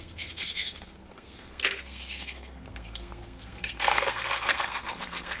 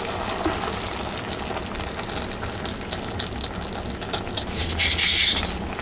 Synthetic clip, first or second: first